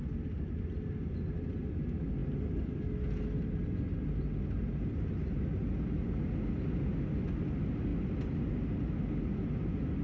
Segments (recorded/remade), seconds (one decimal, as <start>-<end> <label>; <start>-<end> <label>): 0.0-10.0 recorded